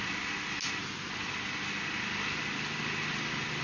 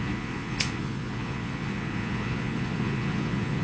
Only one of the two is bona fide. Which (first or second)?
first